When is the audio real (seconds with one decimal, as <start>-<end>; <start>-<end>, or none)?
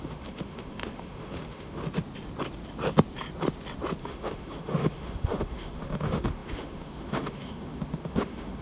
1.8-4.0